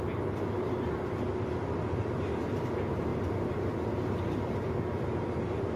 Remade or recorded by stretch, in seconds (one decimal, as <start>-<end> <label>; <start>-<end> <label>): 0.0-5.8 recorded